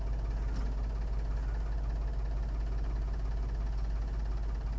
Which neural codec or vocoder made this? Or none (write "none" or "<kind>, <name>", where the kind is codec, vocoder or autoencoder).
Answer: none